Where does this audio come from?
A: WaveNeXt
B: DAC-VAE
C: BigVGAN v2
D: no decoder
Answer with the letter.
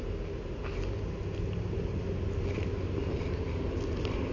D